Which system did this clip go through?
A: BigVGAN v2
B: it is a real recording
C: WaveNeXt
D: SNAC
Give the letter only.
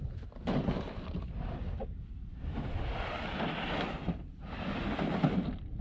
B